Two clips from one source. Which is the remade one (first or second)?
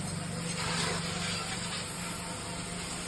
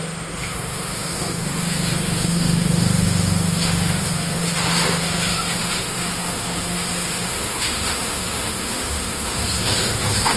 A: second